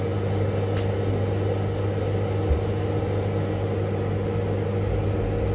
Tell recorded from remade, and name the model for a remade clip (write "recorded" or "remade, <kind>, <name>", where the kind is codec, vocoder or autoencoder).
recorded